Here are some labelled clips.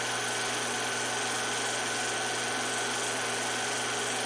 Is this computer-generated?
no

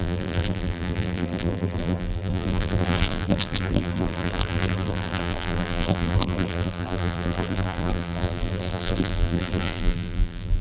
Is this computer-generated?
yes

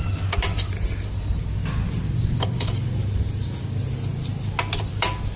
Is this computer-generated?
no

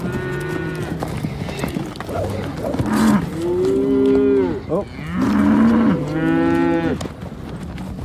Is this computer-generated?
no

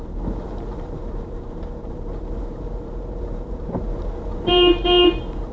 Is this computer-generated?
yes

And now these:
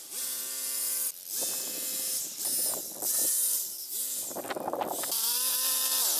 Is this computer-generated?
yes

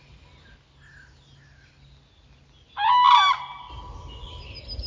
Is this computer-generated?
no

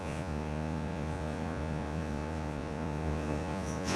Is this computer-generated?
yes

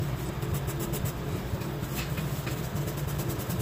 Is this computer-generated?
yes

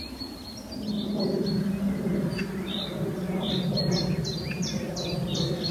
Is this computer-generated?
no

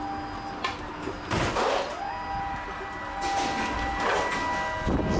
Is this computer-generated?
no